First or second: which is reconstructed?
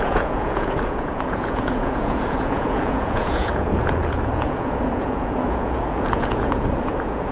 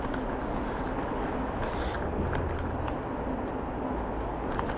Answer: first